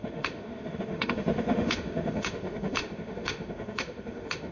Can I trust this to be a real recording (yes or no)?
no